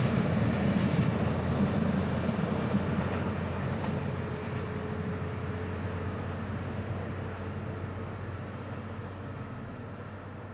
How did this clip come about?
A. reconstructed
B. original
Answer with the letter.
B